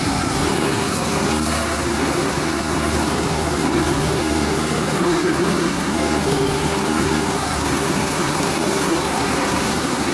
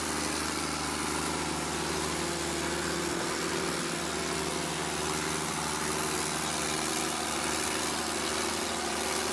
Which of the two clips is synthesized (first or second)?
first